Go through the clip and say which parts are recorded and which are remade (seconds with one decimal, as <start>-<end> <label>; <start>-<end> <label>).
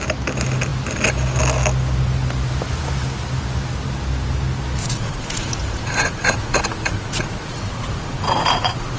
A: 0.0-4.8 recorded; 4.8-9.0 remade